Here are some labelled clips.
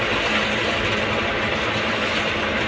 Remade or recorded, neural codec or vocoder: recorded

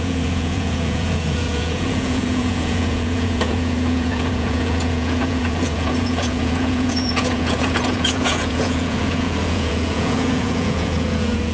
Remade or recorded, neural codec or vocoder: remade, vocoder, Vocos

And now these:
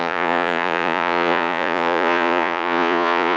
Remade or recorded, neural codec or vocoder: remade, vocoder, Vocos